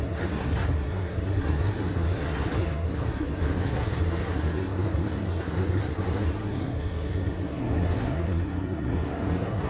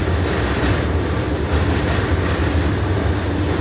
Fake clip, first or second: first